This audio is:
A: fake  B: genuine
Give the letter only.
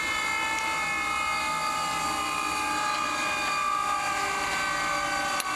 B